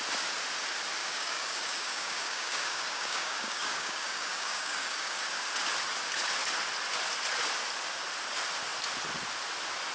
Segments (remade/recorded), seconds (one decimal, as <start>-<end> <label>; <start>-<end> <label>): 0.0-1.0 recorded; 1.0-5.2 remade; 5.2-9.9 recorded